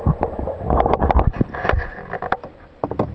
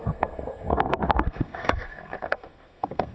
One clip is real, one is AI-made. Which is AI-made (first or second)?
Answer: second